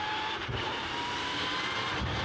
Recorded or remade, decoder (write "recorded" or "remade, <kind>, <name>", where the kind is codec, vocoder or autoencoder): remade, vocoder, BigVGAN v2